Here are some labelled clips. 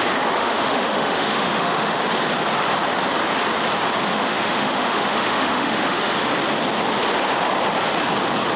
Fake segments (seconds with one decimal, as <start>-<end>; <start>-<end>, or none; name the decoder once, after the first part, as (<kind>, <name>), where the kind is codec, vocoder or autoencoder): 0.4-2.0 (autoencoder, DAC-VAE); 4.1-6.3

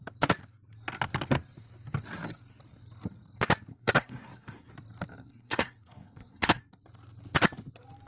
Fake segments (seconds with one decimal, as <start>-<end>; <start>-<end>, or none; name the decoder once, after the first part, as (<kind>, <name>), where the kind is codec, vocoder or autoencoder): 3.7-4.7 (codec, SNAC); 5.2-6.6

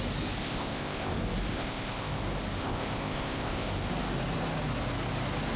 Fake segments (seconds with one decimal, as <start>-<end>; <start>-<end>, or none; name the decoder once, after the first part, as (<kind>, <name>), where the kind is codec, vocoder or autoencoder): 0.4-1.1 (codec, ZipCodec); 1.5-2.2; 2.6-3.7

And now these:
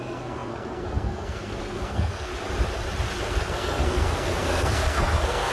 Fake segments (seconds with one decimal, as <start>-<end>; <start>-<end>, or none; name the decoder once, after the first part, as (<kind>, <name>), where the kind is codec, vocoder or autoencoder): 0.0-2.3 (codec, SNAC); 3.2-5.5

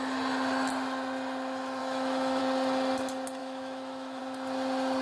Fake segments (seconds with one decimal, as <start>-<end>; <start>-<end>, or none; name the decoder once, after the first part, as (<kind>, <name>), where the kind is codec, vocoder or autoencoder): 1.8-2.4 (autoencoder, DAC-VAE); 3.4-4.2

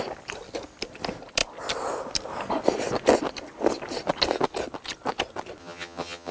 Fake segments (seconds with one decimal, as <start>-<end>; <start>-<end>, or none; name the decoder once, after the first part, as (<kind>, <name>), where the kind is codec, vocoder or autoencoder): 5.6-6.3 (vocoder, HiFi-GAN)

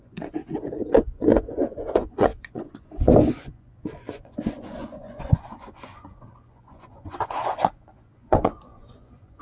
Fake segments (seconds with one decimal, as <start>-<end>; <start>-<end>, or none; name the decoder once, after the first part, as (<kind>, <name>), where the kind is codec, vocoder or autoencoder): 0.0-9.4 (vocoder, Vocos)